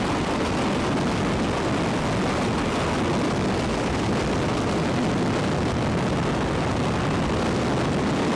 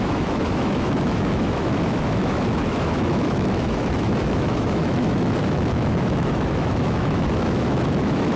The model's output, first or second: second